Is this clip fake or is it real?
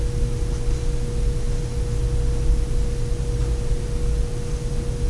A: real